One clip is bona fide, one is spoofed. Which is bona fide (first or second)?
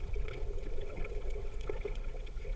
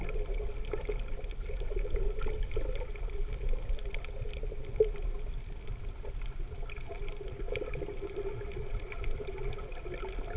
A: second